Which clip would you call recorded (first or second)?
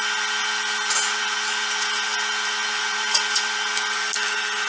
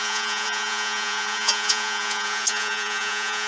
first